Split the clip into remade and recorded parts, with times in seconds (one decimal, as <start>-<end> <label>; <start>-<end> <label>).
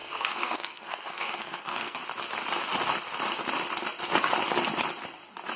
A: 0.0-2.0 remade; 2.0-5.6 recorded